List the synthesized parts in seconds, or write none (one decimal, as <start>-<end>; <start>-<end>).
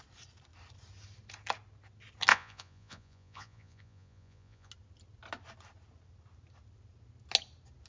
2.3-4.7